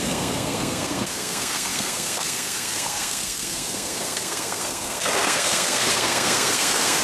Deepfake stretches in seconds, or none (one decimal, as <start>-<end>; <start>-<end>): 0.0-7.0